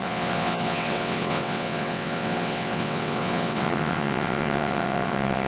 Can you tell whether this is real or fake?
fake